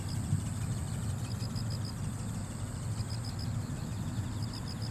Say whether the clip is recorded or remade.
recorded